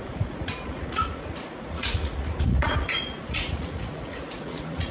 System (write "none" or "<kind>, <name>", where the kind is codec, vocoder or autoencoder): vocoder, Vocos